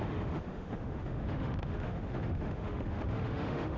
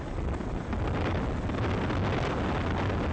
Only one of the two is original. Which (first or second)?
second